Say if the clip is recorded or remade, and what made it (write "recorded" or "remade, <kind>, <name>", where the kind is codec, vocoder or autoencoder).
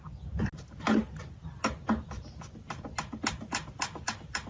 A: recorded